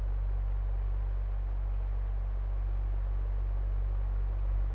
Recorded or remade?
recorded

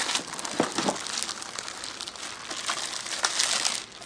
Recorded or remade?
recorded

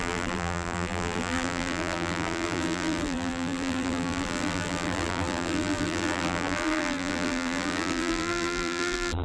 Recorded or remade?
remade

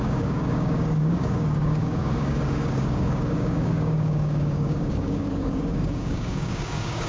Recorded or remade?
remade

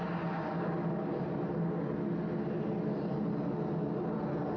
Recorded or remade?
recorded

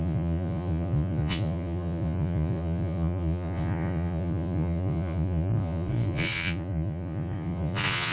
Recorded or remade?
remade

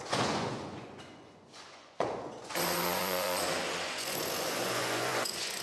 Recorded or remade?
remade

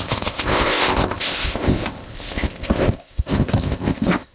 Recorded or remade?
remade